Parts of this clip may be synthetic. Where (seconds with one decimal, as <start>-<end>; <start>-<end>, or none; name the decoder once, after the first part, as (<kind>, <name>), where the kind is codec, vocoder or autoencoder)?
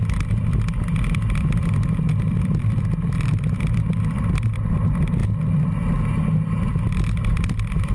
0.0-5.2 (vocoder, BigVGAN v2); 6.7-7.9